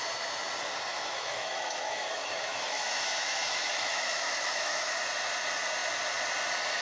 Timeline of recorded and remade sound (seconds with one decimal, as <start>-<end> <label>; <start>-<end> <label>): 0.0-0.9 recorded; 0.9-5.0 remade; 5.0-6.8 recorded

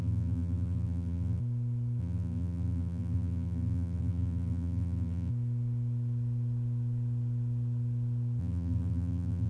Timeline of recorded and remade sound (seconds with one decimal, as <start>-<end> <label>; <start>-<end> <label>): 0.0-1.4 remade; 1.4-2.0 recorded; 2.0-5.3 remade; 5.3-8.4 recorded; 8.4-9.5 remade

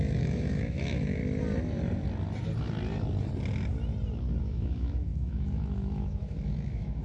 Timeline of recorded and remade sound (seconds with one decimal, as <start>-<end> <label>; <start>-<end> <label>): 0.0-1.2 remade; 1.2-4.4 recorded; 4.4-7.0 remade

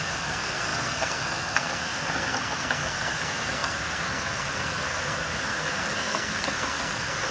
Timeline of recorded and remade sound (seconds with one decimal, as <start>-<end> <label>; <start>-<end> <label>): 0.0-7.3 remade

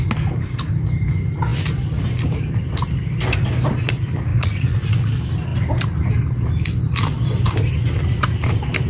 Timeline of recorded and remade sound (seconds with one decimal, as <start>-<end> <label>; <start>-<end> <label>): 0.0-4.3 recorded; 4.3-5.1 remade; 5.1-8.9 recorded